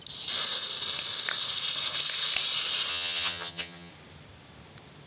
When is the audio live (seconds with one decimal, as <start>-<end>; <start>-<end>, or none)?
0.0-2.9; 3.9-5.1